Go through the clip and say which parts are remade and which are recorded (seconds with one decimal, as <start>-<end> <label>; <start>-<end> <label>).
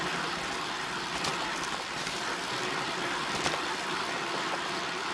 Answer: 0.0-5.1 remade